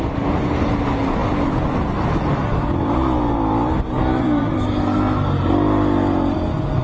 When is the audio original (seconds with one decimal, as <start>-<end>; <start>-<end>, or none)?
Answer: 0.0-6.8